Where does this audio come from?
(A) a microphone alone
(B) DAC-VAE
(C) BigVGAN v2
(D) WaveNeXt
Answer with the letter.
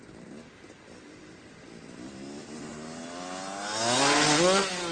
A